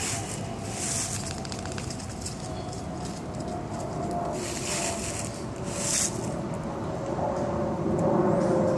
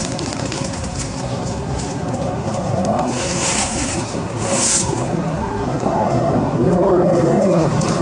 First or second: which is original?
first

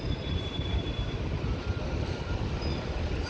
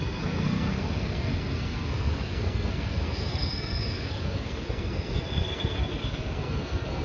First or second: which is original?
first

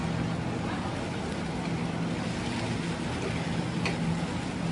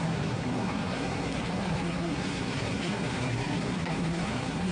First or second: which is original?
first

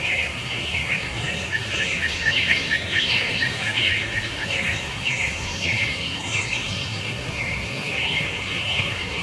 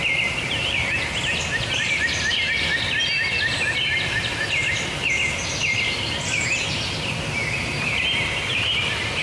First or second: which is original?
second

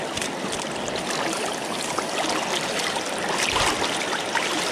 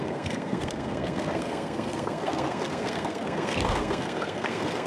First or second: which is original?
first